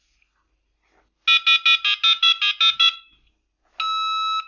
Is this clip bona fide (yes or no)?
yes